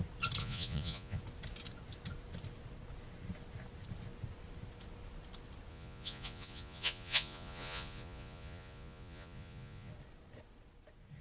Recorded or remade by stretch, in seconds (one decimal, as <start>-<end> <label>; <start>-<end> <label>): 0.0-0.4 recorded; 0.4-1.2 remade; 1.2-5.7 recorded; 5.7-9.9 remade; 9.9-11.2 recorded